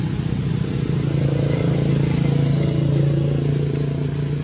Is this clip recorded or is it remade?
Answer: recorded